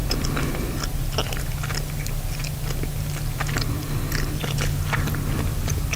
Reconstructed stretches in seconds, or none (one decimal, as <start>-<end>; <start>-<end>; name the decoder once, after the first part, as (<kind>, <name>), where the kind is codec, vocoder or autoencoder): 0.0-1.0 (vocoder, BigVGAN v2)